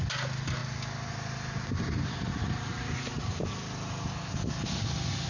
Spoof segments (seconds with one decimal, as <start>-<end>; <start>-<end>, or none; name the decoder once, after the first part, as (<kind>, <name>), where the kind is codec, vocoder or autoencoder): none